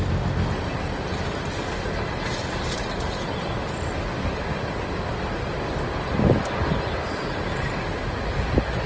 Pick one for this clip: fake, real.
real